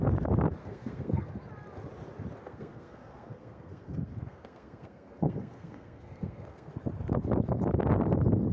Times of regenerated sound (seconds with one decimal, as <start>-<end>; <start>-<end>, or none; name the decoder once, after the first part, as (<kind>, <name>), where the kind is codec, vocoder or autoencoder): 0.6-1.3 (codec, SNAC); 2.4-6.7